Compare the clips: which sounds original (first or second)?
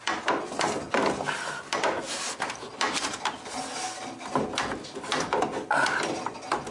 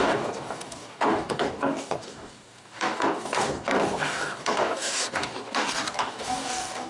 first